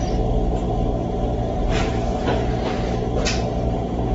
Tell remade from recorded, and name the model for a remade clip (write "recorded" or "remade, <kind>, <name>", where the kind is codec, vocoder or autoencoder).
recorded